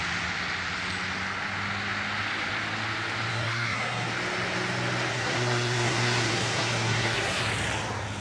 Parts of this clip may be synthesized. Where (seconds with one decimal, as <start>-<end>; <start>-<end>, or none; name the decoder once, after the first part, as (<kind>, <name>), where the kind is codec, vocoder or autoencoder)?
3.3-4.1 (codec, SNAC); 5.1-7.4